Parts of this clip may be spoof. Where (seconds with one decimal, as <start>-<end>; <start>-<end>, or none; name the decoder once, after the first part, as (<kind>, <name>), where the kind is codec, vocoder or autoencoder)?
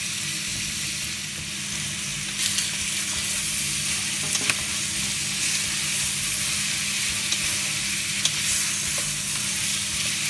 none